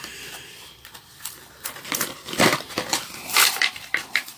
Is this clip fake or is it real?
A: fake